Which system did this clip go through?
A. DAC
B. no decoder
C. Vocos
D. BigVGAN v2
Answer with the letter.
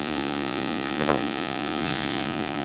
C